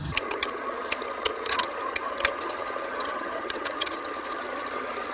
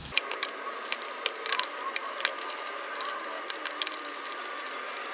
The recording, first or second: second